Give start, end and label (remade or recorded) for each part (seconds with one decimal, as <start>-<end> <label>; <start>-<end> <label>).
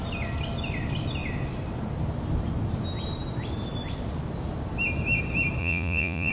0.0-5.6 recorded; 5.6-6.3 remade